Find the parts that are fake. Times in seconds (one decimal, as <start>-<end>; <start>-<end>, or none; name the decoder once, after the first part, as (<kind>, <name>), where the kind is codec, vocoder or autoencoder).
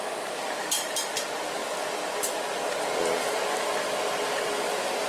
none